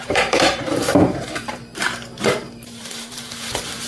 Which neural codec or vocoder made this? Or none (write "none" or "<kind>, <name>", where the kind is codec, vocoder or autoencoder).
vocoder, BigVGAN v2